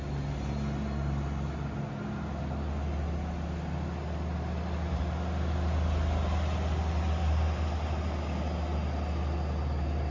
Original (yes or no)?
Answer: yes